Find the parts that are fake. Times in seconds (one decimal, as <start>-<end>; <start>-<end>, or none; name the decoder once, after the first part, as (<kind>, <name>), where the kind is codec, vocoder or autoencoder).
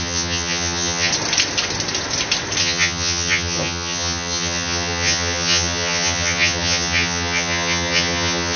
0.0-1.1 (vocoder, HiFi-GAN); 2.6-8.6